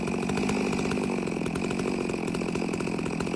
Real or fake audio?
real